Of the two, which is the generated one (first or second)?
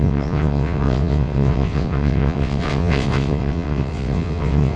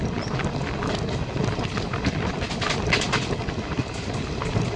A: first